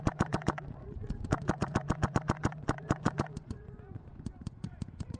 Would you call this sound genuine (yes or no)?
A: no